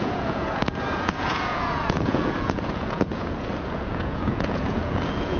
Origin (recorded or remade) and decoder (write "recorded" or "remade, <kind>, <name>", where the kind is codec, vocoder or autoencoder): remade, vocoder, Vocos